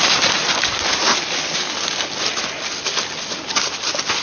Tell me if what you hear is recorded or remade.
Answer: recorded